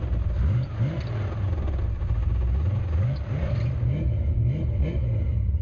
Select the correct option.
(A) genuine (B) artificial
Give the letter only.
A